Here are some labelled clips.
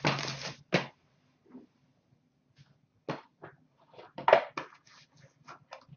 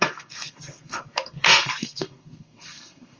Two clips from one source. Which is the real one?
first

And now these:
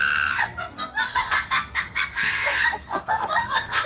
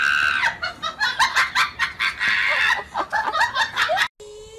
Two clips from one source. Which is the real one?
second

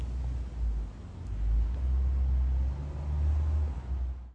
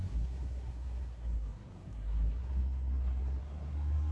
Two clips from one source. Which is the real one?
first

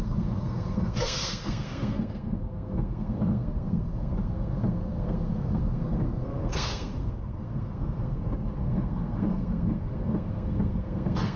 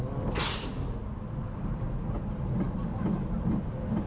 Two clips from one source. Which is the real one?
second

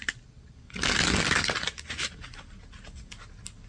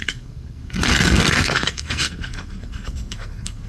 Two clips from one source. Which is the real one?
first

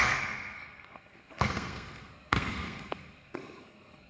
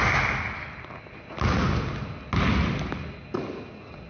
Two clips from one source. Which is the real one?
second